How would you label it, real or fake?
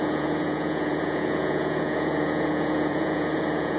fake